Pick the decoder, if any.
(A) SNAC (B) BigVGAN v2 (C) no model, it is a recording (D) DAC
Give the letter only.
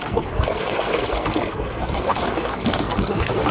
A